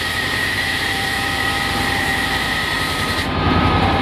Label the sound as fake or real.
fake